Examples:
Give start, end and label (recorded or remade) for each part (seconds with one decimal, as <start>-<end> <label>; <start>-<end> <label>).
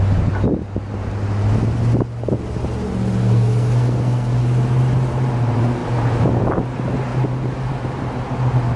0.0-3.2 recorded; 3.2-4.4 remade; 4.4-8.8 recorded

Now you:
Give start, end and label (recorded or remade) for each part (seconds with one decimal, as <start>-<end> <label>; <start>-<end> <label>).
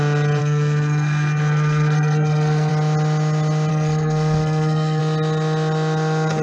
0.0-0.4 recorded; 0.4-2.7 remade; 2.7-3.7 recorded; 3.7-5.0 remade; 5.0-6.4 recorded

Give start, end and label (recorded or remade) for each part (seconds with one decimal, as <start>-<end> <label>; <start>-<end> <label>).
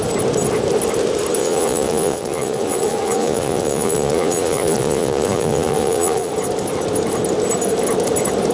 0.0-1.4 recorded; 1.4-6.3 remade; 6.3-8.5 recorded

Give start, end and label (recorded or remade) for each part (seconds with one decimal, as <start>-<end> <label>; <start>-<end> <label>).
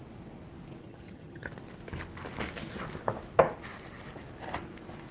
0.0-0.8 recorded; 0.8-1.5 remade; 1.5-5.1 recorded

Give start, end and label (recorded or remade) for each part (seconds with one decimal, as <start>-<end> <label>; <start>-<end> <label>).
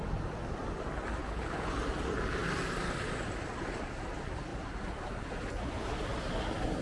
0.0-1.2 recorded; 1.2-1.7 remade; 1.7-6.8 recorded